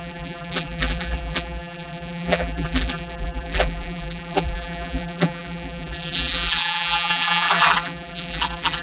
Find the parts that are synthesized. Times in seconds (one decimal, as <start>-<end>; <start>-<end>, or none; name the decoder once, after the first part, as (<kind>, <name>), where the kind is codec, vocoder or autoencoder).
0.0-8.8 (vocoder, BigVGAN v2)